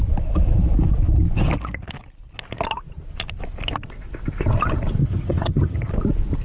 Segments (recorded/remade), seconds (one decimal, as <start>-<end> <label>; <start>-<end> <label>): 0.0-5.0 recorded; 5.0-5.9 remade; 5.9-6.4 recorded